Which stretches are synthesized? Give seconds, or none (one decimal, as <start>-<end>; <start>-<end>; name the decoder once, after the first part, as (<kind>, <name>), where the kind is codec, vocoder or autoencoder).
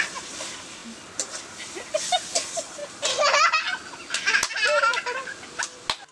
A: none